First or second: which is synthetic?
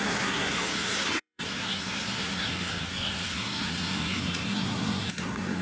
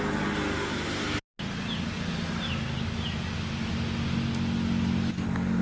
first